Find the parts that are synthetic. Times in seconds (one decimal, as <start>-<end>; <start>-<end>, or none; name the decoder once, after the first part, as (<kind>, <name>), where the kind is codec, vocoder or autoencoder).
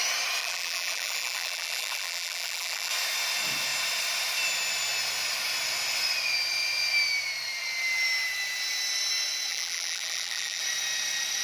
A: 0.4-2.9 (vocoder, BigVGAN v2); 9.5-10.6